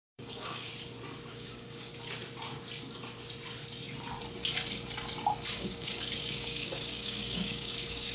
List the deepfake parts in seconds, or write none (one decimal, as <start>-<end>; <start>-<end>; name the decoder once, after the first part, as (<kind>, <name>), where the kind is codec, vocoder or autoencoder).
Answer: 0.0-0.7 (codec, DAC); 1.3-1.9; 5.5-8.1